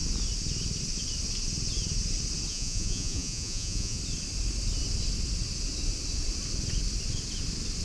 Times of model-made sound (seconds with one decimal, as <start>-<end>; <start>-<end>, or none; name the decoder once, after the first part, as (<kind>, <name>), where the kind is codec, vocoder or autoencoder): 2.5-4.0 (vocoder, Vocos)